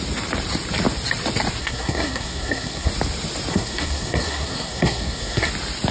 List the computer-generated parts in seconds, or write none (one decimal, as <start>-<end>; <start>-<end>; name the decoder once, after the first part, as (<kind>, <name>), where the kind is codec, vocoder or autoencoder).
1.6-2.9 (codec, SNAC); 3.5-5.5

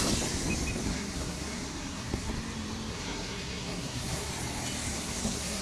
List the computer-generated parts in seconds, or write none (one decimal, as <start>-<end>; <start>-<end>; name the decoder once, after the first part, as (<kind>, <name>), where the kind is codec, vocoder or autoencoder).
0.8-2.3 (codec, SNAC); 2.9-4.3; 4.9-5.6

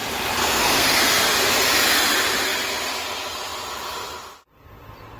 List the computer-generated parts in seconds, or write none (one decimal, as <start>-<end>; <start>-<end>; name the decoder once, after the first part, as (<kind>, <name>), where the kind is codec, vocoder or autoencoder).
0.4-1.2 (codec, SNAC)

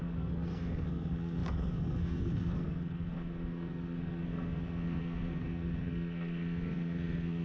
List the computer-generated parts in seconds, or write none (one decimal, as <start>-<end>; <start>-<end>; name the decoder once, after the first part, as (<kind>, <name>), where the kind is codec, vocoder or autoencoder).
0.0-7.4 (codec, SNAC)

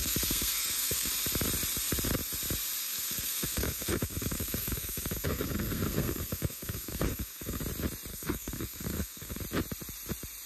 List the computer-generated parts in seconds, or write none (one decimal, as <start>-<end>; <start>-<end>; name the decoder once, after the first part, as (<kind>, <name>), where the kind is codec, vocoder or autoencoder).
0.0-1.1 (codec, SNAC); 2.8-7.6; 8.1-9.4

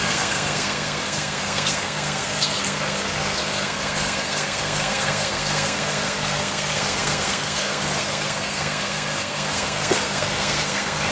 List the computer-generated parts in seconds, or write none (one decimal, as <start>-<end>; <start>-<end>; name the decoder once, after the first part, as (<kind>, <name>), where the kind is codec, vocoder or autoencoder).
0.0-11.1 (codec, SNAC)